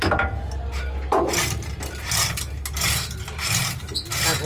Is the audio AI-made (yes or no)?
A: no